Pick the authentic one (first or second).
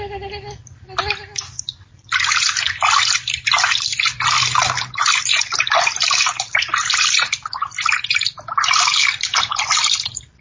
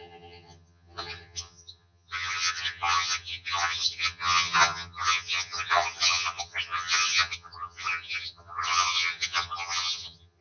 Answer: first